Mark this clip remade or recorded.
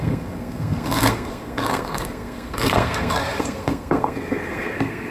remade